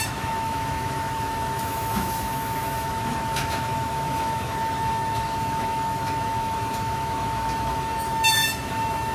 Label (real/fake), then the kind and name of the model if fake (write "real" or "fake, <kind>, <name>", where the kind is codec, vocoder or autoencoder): fake, autoencoder, DAC-VAE